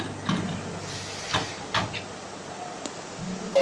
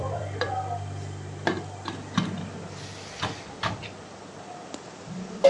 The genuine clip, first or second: first